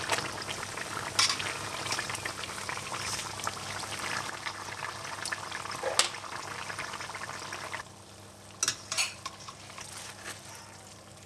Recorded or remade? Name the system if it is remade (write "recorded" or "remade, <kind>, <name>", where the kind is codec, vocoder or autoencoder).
recorded